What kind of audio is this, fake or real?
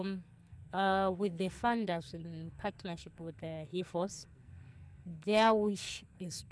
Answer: fake